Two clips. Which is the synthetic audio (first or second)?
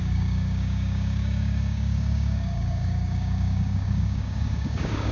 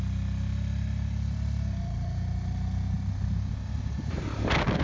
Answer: first